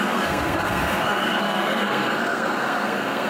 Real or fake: fake